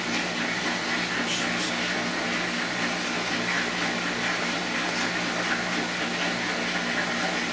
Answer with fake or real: real